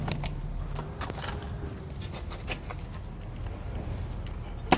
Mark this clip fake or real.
real